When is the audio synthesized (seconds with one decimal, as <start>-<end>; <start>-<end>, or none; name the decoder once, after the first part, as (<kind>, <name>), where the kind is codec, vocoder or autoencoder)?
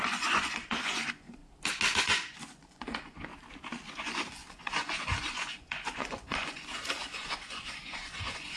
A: 0.0-1.4 (vocoder, Vocos); 2.0-3.3; 3.9-8.6